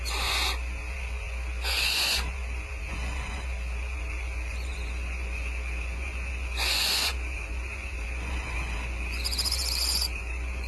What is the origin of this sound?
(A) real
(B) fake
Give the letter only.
B